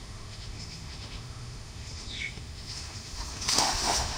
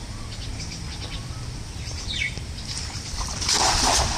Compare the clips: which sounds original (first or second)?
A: second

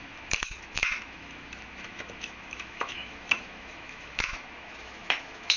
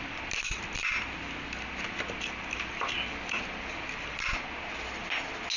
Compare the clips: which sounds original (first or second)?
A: second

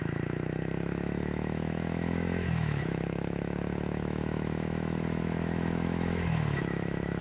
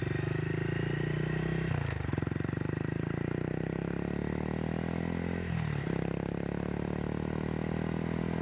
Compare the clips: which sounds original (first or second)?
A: second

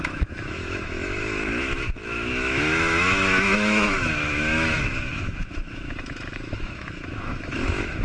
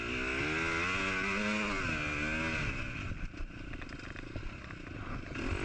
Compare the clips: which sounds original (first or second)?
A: second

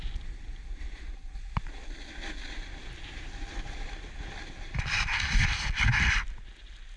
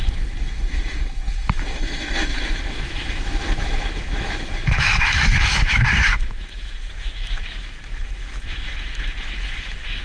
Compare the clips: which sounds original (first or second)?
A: first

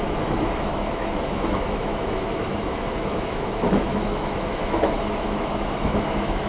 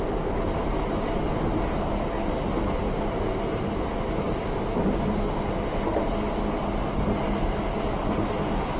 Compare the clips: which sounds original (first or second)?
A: second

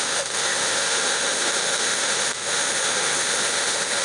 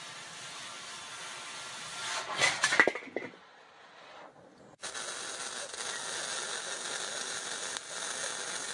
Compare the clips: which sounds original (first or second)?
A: second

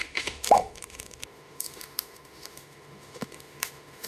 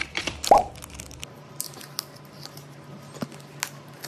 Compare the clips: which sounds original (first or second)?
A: second